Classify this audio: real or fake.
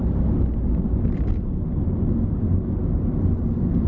real